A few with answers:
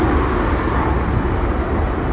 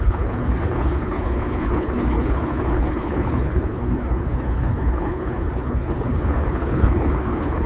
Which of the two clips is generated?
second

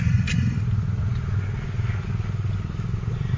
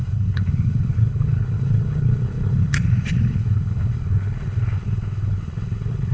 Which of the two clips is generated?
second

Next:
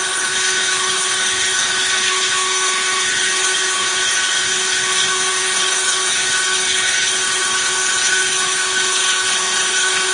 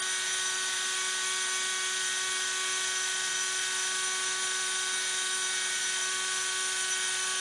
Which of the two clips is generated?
first